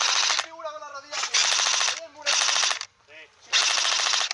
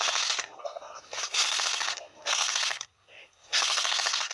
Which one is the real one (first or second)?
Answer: first